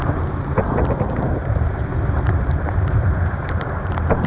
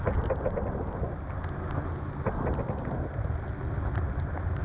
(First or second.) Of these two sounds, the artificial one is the first